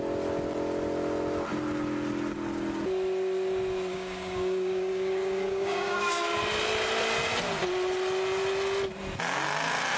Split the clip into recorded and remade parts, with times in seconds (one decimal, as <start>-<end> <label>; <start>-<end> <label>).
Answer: 0.0-3.9 recorded; 3.9-6.1 remade; 6.1-10.0 recorded